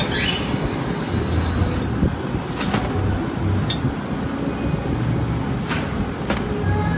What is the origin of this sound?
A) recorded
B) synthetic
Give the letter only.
A